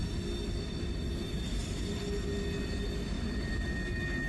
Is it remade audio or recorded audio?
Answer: recorded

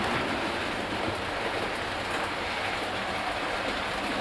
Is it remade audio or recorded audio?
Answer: recorded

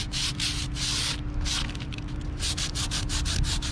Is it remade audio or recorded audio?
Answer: recorded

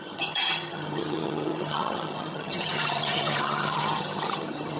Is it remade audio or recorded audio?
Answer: remade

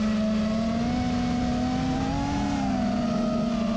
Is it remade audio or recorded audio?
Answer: recorded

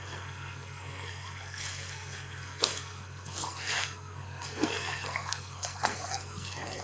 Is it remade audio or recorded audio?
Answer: remade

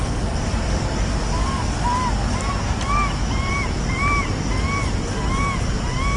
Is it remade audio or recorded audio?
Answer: recorded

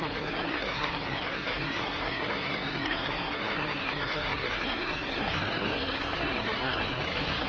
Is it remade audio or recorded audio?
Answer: remade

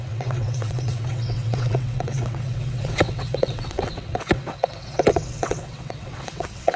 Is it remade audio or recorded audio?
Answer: remade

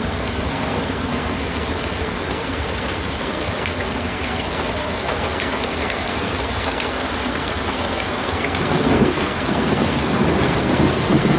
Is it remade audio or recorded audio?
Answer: remade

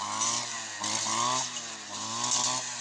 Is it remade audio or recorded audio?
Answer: recorded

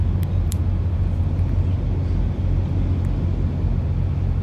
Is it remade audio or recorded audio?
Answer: recorded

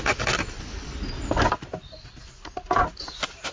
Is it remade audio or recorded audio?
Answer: recorded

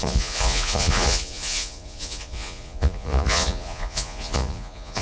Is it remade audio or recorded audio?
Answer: remade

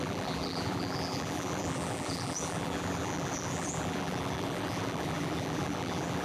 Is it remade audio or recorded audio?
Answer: remade